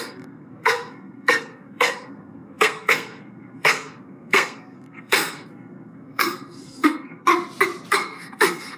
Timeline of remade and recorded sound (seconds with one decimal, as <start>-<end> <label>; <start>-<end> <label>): 0.0-7.3 remade; 7.3-7.9 recorded; 7.9-8.8 remade